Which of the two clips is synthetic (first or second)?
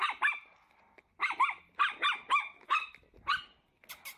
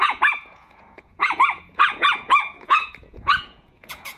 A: second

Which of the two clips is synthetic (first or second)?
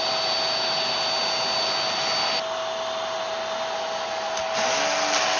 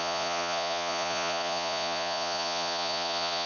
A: second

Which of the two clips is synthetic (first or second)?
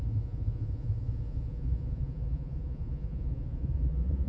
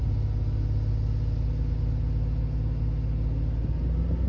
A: first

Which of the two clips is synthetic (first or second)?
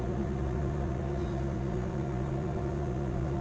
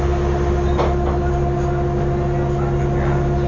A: first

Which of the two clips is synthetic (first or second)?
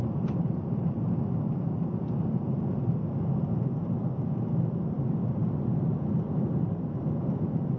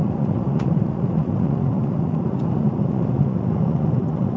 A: second